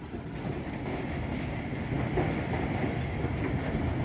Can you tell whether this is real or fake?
real